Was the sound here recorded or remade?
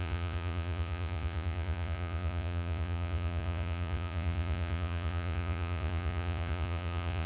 remade